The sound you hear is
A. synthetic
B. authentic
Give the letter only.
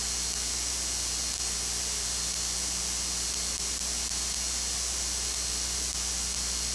B